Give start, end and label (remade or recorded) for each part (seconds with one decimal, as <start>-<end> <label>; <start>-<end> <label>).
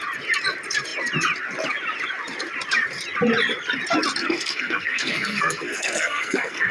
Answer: 0.0-4.2 recorded; 4.2-6.7 remade